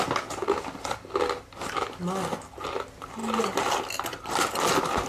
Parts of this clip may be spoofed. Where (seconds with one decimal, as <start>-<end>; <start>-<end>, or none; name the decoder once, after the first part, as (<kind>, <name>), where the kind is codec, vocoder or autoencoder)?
none